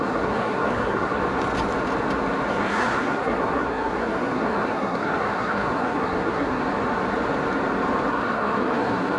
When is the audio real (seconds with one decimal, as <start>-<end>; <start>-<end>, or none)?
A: 1.2-2.5; 6.6-8.1